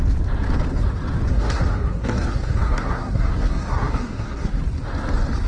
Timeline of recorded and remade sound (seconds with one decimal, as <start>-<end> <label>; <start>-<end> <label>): 0.0-1.3 recorded; 1.3-4.6 remade; 4.6-5.5 recorded